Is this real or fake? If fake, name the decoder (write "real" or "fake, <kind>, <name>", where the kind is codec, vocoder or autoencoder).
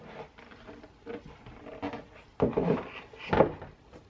real